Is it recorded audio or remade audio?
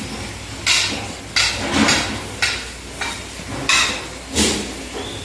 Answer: recorded